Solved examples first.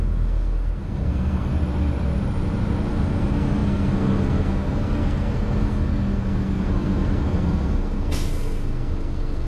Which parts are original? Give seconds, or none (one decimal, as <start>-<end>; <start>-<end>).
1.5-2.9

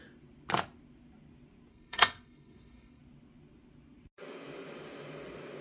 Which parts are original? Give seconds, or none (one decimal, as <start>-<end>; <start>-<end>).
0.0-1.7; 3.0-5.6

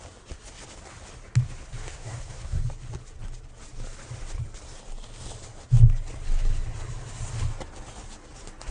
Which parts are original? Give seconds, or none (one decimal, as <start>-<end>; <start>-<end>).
0.0-1.8; 2.6-8.7

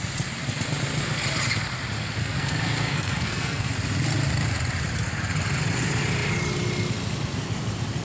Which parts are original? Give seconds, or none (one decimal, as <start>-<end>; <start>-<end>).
0.0-2.2; 3.7-8.0

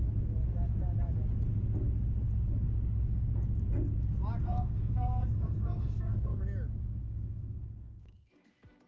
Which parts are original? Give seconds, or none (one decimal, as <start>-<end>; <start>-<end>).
0.0-4.4; 6.4-7.0; 8.5-8.9